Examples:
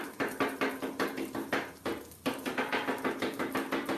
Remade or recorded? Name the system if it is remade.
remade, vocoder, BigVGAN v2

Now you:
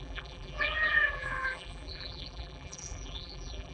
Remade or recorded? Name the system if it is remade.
remade, vocoder, BigVGAN v2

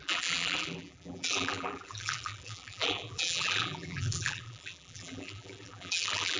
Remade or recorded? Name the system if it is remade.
remade, vocoder, BigVGAN v2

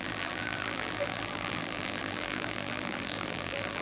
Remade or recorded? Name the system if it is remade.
remade, vocoder, BigVGAN v2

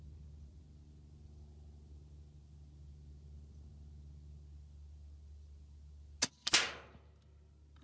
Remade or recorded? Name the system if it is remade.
recorded